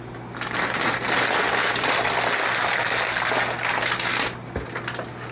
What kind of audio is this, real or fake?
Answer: real